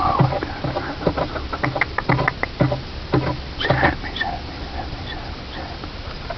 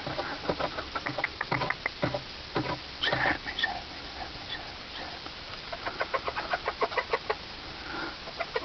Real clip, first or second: first